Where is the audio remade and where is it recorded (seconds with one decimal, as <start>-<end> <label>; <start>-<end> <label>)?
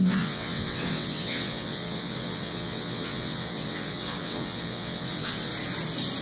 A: 0.0-5.5 remade; 5.5-6.2 recorded